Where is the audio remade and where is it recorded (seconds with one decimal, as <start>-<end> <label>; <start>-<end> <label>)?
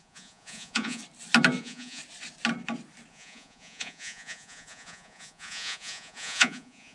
0.0-1.0 remade; 1.0-1.6 recorded; 1.6-2.0 remade; 2.0-3.1 recorded; 3.1-6.9 remade